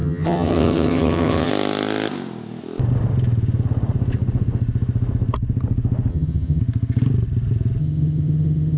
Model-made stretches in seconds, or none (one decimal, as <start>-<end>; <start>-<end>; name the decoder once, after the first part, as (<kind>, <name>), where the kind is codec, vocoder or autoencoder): 0.0-1.5 (vocoder, HiFi-GAN); 6.1-6.6; 7.8-8.8